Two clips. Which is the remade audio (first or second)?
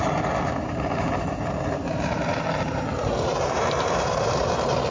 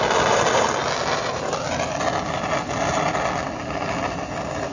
first